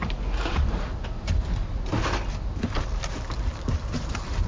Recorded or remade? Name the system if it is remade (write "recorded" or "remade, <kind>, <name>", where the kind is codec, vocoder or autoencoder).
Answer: recorded